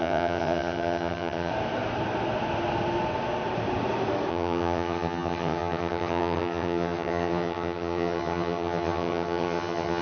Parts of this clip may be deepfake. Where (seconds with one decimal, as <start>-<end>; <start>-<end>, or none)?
0.0-1.5; 4.3-10.0